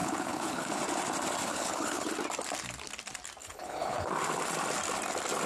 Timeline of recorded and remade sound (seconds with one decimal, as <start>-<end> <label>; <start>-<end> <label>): 0.0-0.8 remade; 0.8-1.5 recorded; 1.5-2.1 remade; 2.1-3.4 recorded; 3.4-4.1 remade; 4.1-5.5 recorded